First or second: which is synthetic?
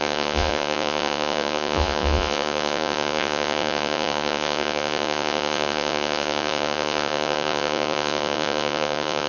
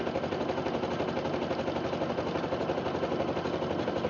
first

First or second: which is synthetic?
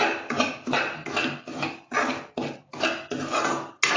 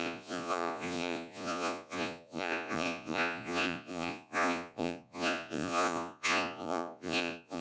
second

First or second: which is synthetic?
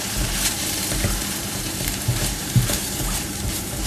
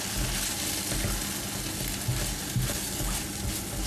first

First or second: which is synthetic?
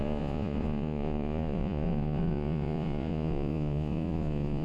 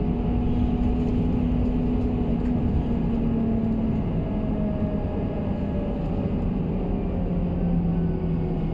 first